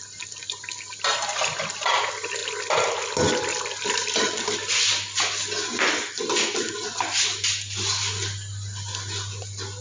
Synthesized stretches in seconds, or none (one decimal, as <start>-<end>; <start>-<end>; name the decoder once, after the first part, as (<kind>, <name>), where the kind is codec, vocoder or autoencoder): none